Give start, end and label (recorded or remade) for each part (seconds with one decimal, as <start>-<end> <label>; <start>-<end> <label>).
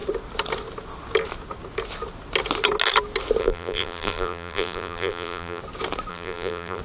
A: 0.0-3.4 recorded; 3.4-5.6 remade; 5.6-6.1 recorded; 6.1-6.8 remade